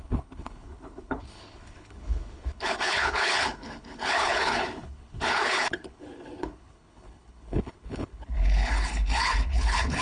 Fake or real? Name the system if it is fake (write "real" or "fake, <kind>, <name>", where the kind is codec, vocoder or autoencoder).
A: fake, codec, HILCodec